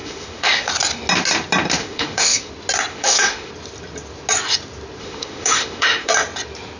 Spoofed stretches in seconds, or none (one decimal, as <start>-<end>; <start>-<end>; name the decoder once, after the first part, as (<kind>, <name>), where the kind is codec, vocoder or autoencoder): 0.0-0.7 (autoencoder, DAC-VAE); 1.8-2.5; 2.9-3.5; 5.0-6.1